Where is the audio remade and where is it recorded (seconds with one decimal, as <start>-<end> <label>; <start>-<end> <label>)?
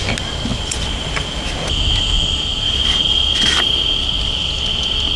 0.0-0.5 recorded; 0.5-1.4 remade; 1.4-2.5 recorded; 2.5-3.3 remade; 3.3-5.2 recorded